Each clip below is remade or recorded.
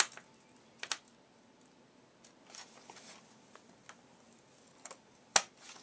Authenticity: recorded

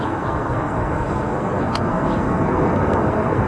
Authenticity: remade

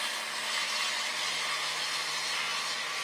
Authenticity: recorded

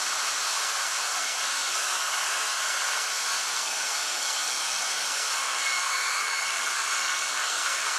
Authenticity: remade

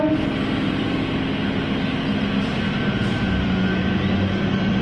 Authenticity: recorded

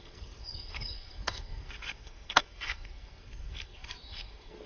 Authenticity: remade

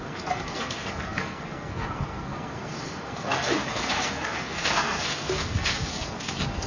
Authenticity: remade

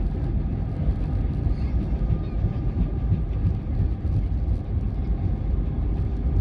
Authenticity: recorded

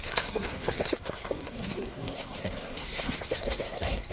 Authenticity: remade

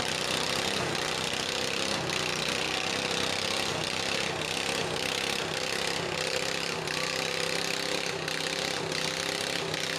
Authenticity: recorded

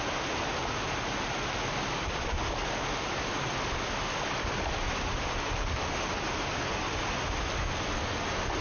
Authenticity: recorded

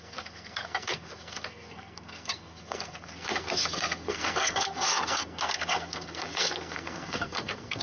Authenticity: remade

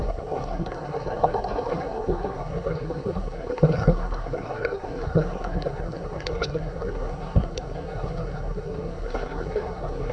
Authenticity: remade